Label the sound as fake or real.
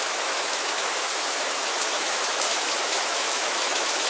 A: fake